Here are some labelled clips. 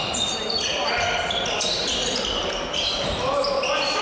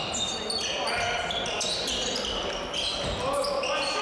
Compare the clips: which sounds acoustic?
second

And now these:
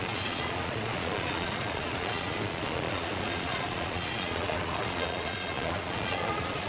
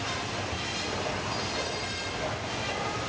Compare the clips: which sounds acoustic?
second